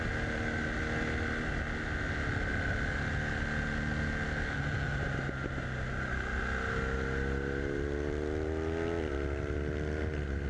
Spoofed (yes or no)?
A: no